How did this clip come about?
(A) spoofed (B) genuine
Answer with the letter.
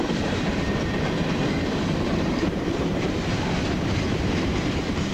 A